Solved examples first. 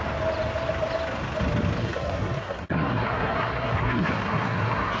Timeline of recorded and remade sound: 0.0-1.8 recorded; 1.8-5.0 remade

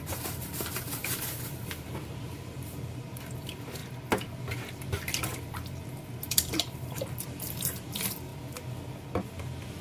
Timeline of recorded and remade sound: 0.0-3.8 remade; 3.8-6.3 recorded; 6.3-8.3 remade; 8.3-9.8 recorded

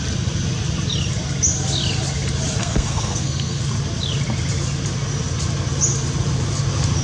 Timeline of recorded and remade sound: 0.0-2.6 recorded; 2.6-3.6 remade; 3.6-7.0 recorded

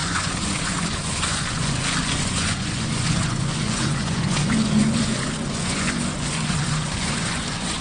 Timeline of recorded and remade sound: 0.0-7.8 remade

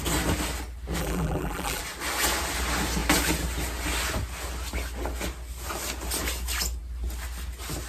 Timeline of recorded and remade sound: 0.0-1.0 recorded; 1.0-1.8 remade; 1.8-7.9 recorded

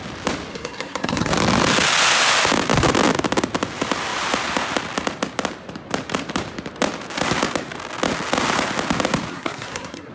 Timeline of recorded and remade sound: 0.0-0.5 recorded; 0.5-1.3 remade; 1.3-9.3 recorded; 9.3-10.1 remade